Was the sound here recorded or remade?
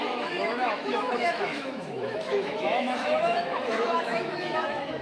remade